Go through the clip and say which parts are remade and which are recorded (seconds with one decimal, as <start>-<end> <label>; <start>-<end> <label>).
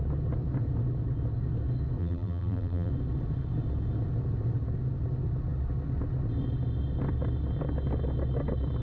0.0-2.0 recorded; 2.0-2.9 remade; 2.9-8.8 recorded